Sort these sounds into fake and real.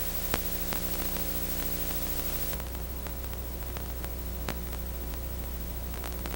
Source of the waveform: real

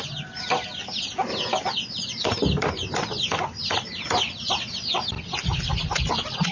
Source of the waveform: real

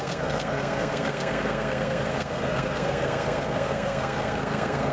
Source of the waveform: fake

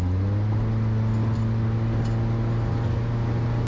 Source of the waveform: real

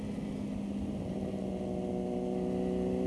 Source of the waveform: real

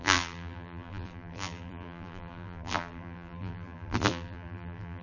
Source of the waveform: fake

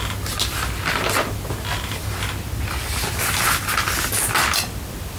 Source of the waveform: real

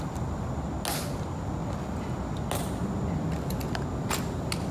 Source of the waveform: real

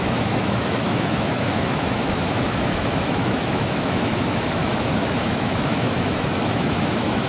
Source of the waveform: fake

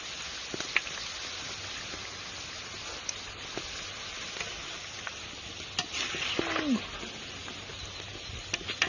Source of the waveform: real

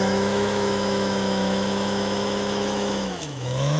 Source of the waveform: fake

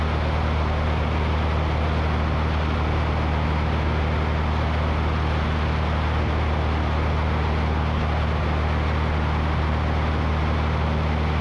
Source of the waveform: real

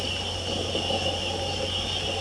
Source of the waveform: real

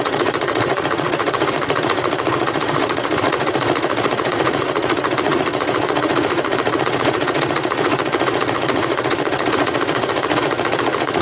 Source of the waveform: fake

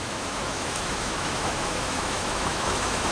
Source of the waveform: fake